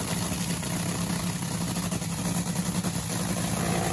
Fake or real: real